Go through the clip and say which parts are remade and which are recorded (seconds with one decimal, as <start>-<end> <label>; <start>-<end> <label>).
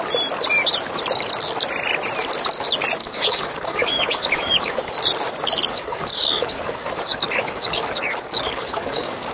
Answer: 0.0-3.0 recorded; 3.0-4.9 remade; 4.9-5.7 recorded; 5.7-9.3 remade